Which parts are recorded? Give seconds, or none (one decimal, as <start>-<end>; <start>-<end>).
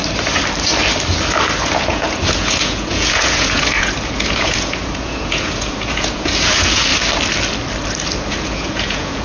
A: 0.0-1.6; 6.9-8.3